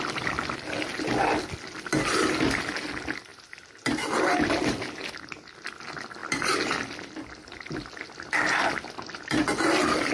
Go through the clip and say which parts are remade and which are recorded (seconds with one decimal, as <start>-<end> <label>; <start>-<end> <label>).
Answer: 0.0-10.1 recorded